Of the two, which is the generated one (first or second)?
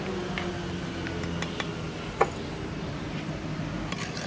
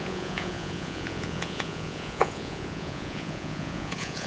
second